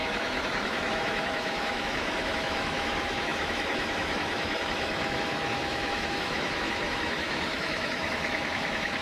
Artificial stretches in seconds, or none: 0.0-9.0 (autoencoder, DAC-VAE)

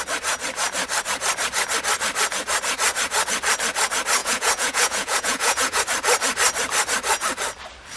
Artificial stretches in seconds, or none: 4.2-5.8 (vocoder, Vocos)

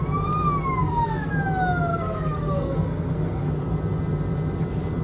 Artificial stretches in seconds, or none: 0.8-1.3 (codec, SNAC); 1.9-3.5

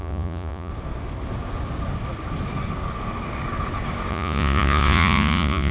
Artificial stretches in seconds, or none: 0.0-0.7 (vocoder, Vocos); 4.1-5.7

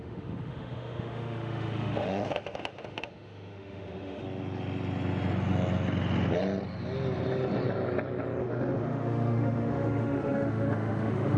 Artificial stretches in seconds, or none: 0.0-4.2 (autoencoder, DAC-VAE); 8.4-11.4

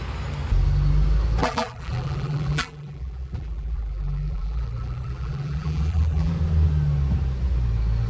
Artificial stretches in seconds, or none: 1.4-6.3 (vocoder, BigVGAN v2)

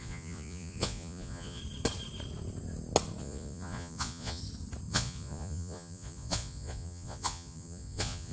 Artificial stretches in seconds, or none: 0.0-1.6 (vocoder, Vocos); 3.2-4.4; 4.9-8.3

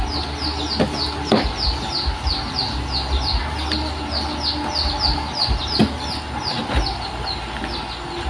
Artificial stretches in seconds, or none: none